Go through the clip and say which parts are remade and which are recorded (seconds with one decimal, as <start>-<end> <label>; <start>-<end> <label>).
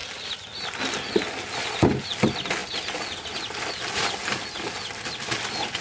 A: 0.0-5.8 recorded